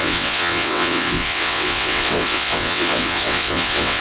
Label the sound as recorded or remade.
remade